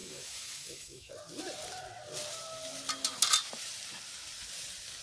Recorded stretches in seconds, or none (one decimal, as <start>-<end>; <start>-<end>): 1.1-5.0